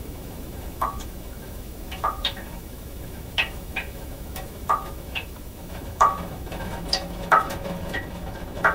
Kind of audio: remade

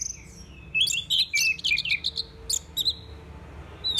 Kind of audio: recorded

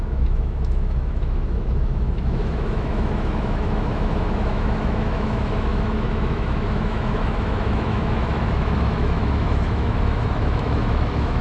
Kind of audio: remade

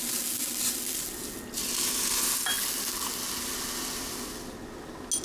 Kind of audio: recorded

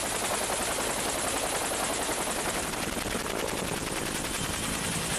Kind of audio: recorded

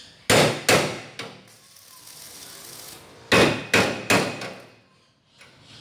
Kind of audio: recorded